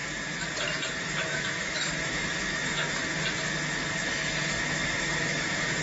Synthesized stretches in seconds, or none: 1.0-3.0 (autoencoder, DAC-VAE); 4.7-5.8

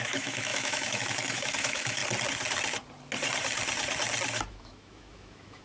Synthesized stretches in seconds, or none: 0.0-2.0 (autoencoder, DAC-VAE); 4.5-5.6